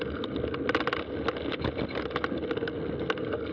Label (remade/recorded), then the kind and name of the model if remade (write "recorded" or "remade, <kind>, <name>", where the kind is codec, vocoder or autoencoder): recorded